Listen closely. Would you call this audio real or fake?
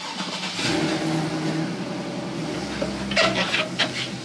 real